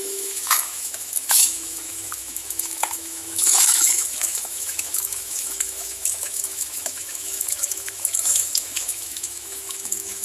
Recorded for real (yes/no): no